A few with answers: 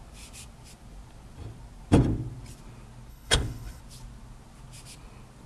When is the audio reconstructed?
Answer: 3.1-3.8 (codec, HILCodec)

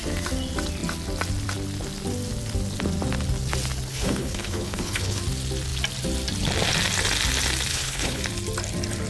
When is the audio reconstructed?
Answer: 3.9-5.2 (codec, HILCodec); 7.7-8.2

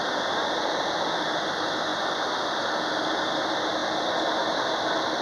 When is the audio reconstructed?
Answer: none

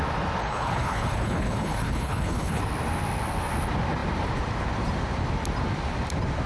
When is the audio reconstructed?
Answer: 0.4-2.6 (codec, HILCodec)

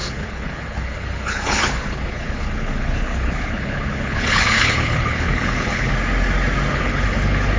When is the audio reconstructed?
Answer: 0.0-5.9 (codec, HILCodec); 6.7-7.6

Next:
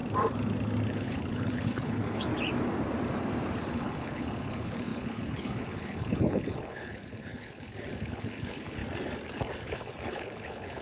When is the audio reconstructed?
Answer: 0.9-2.3 (codec, HILCodec); 3.7-8.8; 9.3-10.8

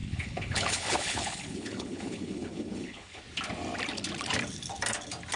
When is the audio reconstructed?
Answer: 0.0-3.2 (codec, HILCodec)